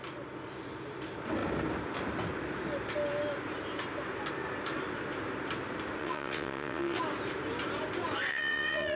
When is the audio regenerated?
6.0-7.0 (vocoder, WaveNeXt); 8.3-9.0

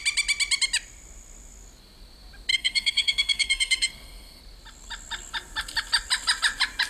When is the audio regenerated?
2.5-4.4 (codec, SNAC)

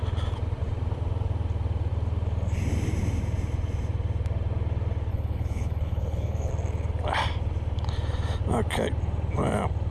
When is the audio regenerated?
5.1-6.5 (codec, HILCodec)

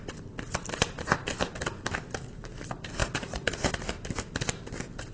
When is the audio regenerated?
3.0-3.7 (vocoder, Vocos)